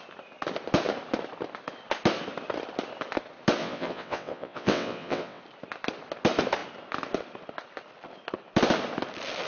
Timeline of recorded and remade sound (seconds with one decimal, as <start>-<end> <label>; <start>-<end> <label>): 0.0-3.6 recorded; 3.6-5.4 remade; 5.4-9.5 recorded